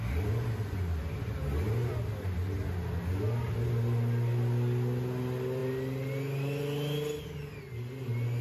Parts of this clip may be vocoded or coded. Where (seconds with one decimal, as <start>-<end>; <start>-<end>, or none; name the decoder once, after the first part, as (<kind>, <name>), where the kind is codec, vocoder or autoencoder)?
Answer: none

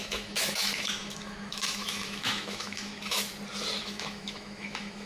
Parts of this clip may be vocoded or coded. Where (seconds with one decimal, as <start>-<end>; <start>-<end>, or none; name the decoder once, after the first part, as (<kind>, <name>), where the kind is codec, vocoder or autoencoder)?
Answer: 0.0-3.3 (autoencoder, DAC-VAE); 3.8-5.1

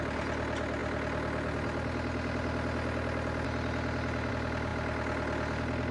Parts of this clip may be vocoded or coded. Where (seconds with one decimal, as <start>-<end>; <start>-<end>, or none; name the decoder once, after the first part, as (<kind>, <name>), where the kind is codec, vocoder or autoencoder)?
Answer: none

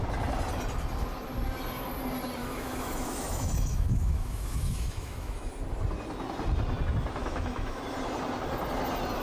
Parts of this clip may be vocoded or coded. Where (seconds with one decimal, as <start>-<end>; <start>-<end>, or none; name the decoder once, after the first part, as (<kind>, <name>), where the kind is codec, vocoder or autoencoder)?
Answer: 2.4-5.5 (autoencoder, DAC-VAE); 7.2-7.8

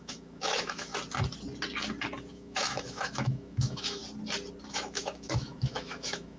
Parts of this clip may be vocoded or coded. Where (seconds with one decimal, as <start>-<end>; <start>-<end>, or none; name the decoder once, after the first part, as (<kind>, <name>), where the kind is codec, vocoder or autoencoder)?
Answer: 0.0-0.9 (autoencoder, DAC-VAE); 2.3-4.0; 4.7-6.4